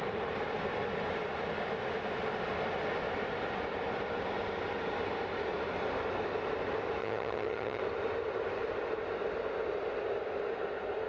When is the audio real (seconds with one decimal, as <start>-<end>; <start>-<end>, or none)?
0.0-7.0; 7.8-11.1